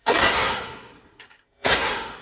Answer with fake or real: fake